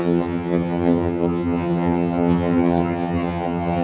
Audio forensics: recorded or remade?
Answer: remade